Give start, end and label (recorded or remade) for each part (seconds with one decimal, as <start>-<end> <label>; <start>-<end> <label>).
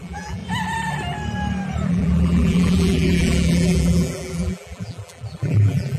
0.0-0.4 remade; 0.4-1.9 recorded; 1.9-6.0 remade